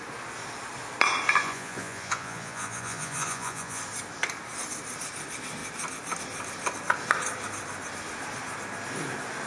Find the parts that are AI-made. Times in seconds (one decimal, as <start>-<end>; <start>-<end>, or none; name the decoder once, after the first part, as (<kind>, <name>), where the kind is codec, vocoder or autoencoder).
1.4-3.8 (vocoder, Vocos)